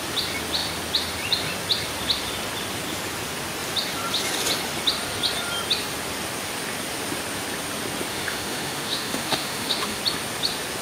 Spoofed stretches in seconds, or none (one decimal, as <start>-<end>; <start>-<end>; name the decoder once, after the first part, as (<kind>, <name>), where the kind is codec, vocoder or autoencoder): 8.1-10.0 (autoencoder, DAC-VAE)